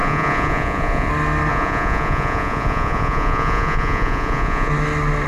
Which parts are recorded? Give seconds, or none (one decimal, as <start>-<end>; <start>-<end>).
1.1-1.5; 4.7-5.3